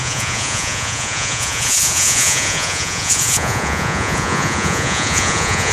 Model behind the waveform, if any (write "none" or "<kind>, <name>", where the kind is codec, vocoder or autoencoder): vocoder, Vocos